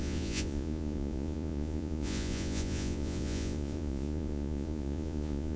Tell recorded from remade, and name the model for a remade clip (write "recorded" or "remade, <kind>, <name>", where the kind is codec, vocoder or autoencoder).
remade, vocoder, Vocos